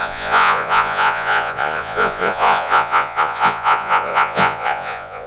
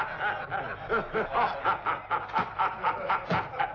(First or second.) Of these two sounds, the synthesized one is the first